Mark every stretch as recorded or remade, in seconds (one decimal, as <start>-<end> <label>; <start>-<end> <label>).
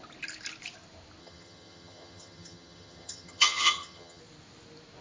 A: 0.0-1.2 recorded; 1.2-4.2 remade; 4.2-5.0 recorded